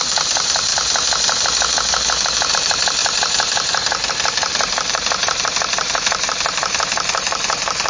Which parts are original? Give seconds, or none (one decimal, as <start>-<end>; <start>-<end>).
0.7-2.5; 3.0-4.1